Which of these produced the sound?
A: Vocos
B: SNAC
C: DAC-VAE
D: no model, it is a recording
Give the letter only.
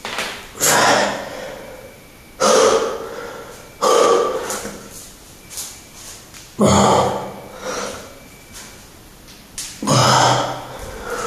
D